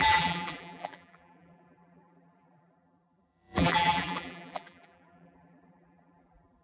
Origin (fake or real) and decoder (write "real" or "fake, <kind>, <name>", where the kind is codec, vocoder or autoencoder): fake, vocoder, BigVGAN v2